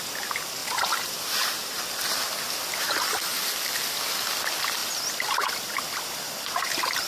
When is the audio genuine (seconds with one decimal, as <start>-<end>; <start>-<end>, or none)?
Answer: 0.0-0.6; 1.8-7.1